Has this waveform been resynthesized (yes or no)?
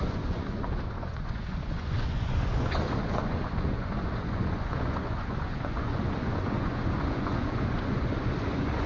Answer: yes